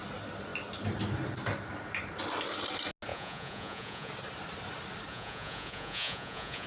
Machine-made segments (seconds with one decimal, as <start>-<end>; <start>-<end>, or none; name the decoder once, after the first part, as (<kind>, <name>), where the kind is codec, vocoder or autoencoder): 3.1-4.1 (vocoder, Vocos); 5.1-6.7